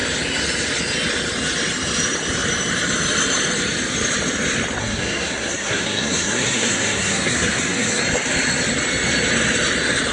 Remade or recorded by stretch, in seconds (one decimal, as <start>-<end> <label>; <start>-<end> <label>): 0.0-4.8 recorded; 4.8-8.0 remade; 8.0-10.1 recorded